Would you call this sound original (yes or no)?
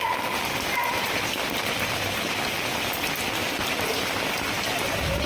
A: yes